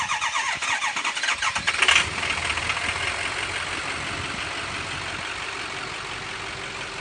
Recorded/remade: recorded